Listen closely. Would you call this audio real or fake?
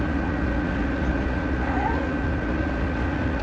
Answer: fake